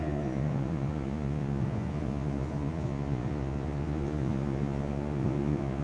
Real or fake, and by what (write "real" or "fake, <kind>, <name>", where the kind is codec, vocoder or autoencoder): fake, vocoder, Vocos